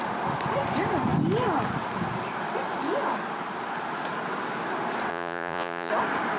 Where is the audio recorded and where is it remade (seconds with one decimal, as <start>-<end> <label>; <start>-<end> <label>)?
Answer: 0.0-5.1 recorded; 5.1-5.9 remade; 5.9-6.4 recorded